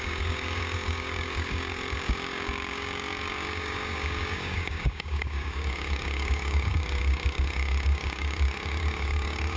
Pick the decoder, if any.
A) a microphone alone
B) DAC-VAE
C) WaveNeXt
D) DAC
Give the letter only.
D